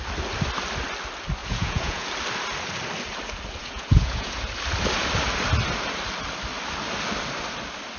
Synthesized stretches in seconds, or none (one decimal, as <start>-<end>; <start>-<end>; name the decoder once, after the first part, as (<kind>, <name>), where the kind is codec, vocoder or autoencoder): 1.4-2.1 (vocoder, Vocos); 3.6-4.5